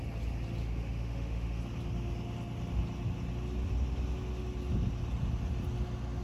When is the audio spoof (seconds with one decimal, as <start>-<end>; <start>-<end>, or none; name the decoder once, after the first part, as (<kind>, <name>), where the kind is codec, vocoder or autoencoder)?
0.6-1.6 (autoencoder, DAC-VAE)